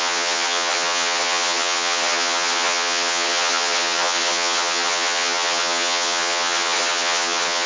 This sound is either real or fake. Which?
fake